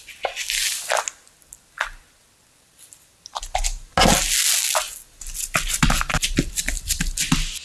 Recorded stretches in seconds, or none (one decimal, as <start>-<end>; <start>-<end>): 0.0-7.6